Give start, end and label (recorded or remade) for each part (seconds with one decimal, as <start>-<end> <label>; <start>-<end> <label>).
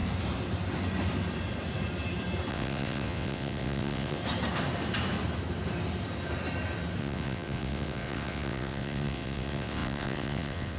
0.0-2.5 recorded; 2.5-4.2 remade; 4.2-7.0 recorded; 7.0-10.8 remade